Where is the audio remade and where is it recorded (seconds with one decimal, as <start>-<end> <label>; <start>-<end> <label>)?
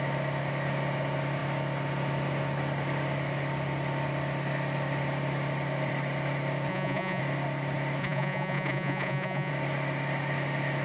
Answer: 0.0-6.7 recorded; 6.7-7.2 remade; 7.2-8.0 recorded; 8.0-9.5 remade; 9.5-10.8 recorded